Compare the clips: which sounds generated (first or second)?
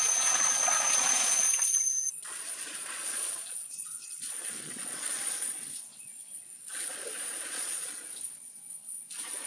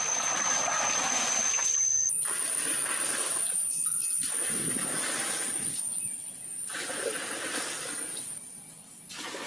first